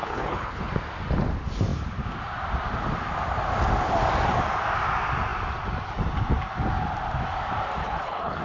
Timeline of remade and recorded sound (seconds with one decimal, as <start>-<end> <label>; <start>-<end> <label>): 0.0-0.7 remade; 0.7-7.8 recorded; 7.8-8.4 remade